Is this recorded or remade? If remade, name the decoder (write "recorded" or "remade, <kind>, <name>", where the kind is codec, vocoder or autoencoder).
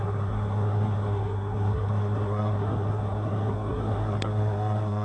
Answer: remade, codec, SNAC